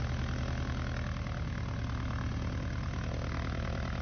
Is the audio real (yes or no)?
yes